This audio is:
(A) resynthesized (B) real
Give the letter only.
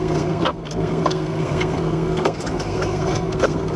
A